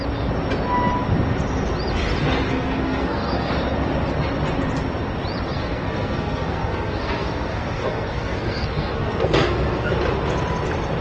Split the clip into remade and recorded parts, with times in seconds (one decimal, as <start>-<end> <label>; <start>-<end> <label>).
0.0-2.5 recorded; 2.5-3.5 remade; 3.5-5.5 recorded; 5.5-9.9 remade; 9.9-11.0 recorded